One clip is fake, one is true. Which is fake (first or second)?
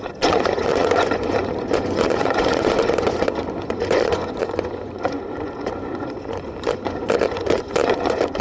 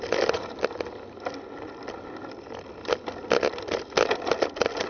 first